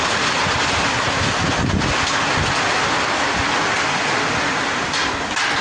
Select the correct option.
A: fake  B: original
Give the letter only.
B